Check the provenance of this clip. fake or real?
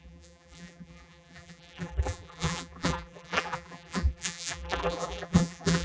fake